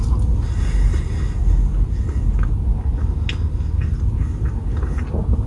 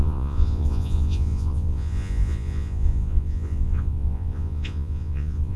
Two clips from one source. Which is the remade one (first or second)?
second